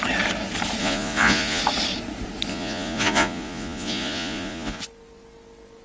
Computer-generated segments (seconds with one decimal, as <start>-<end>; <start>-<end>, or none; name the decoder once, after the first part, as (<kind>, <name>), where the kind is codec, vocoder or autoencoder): 0.8-1.6 (vocoder, Vocos); 2.5-4.8